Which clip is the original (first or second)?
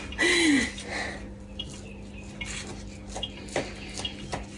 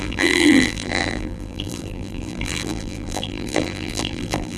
first